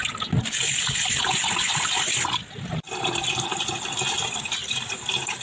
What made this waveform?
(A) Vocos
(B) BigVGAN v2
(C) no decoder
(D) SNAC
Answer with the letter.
C